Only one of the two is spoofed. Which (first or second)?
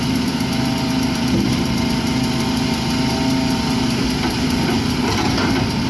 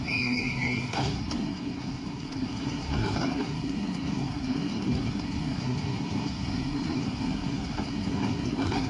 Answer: second